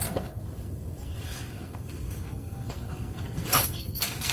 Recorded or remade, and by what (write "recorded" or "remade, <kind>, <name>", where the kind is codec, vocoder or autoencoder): remade, codec, SNAC